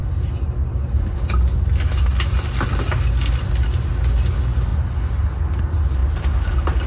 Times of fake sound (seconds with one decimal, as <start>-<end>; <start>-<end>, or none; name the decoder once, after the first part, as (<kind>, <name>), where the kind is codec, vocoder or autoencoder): none